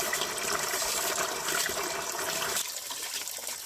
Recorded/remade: remade